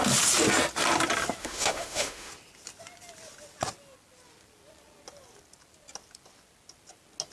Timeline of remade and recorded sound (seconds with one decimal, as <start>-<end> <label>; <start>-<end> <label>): 0.0-1.4 recorded; 1.4-2.3 remade; 2.3-7.3 recorded